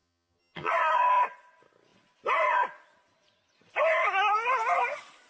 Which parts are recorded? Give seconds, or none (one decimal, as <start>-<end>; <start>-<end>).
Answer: 0.7-5.3